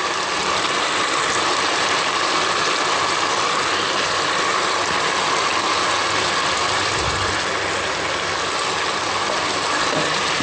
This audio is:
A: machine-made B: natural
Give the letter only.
B